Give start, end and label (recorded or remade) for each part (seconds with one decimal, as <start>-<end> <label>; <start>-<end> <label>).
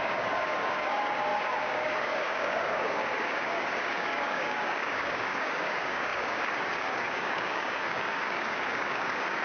0.0-9.4 remade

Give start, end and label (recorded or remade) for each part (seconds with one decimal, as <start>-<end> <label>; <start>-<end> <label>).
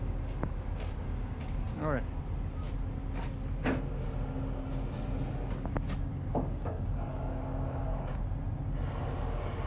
0.0-1.8 remade; 1.8-6.3 recorded; 6.3-8.1 remade; 8.1-9.1 recorded; 9.1-9.7 remade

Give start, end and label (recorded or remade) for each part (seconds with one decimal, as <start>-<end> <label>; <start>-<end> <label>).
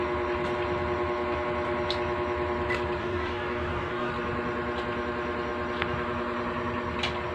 0.0-3.0 recorded; 3.0-4.1 remade; 4.1-7.3 recorded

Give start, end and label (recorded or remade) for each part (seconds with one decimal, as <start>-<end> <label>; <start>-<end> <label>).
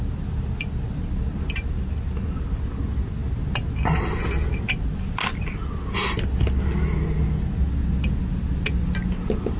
0.0-9.6 recorded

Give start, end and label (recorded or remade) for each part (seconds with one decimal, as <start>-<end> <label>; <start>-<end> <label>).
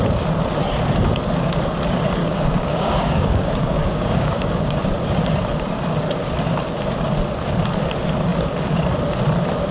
0.0-2.2 recorded; 2.2-4.8 remade; 4.8-9.7 recorded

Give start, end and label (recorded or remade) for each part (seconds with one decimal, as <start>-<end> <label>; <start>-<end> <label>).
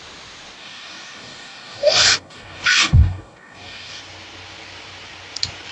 0.0-0.6 recorded; 0.6-4.0 remade; 4.0-5.7 recorded